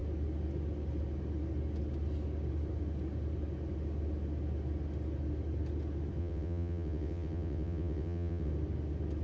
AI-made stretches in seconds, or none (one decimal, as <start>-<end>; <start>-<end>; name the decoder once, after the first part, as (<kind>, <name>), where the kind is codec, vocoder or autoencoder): 6.2-8.5 (vocoder, WaveNeXt)